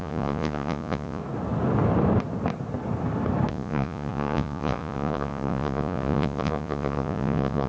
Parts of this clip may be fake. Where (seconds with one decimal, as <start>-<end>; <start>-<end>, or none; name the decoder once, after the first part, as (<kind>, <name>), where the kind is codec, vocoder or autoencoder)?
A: 0.0-1.2 (vocoder, Vocos); 3.5-7.7